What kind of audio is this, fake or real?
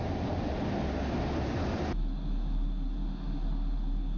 real